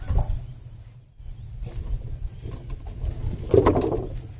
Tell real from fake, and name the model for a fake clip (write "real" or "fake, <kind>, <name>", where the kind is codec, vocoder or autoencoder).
real